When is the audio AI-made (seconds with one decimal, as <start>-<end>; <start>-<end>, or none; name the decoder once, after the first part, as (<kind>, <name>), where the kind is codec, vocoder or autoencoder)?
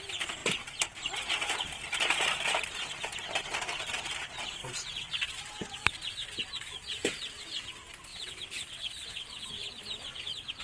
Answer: 4.6-5.1 (vocoder, WaveNeXt); 8.1-9.6